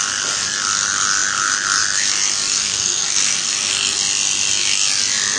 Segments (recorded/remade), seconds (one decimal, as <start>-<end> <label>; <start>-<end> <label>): 0.0-2.5 recorded; 2.5-4.0 remade; 4.0-5.4 recorded